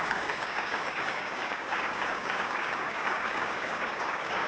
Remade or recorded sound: remade